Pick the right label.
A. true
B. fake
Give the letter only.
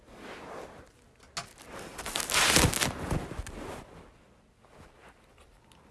A